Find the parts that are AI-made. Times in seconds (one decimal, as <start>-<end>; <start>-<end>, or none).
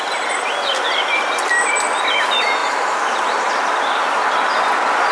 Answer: 2.6-3.6